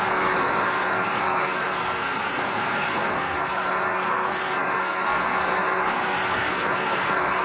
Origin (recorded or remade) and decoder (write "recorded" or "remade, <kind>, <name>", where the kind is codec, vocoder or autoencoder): remade, codec, SNAC